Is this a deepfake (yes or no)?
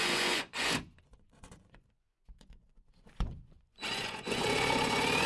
yes